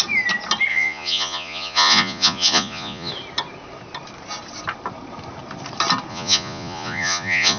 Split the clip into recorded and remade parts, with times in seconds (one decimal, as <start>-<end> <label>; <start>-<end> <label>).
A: 0.0-0.7 recorded; 0.7-3.1 remade; 3.1-6.1 recorded; 6.1-7.6 remade